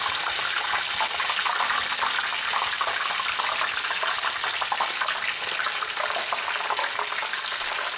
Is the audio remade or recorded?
recorded